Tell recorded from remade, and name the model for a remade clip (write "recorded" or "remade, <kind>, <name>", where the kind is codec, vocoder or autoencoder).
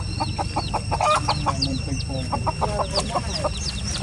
recorded